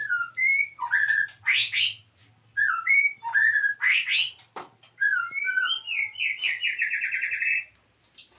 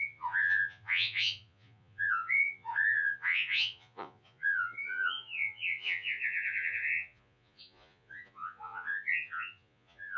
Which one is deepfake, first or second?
second